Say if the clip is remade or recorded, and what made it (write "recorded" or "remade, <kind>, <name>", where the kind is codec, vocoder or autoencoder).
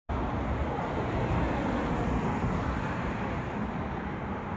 recorded